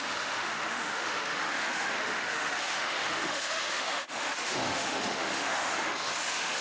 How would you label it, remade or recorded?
remade